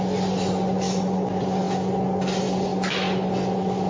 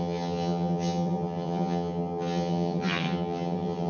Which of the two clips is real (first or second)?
first